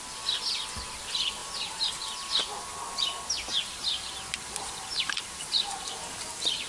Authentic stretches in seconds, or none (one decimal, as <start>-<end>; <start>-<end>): 0.0-1.4; 1.9-3.5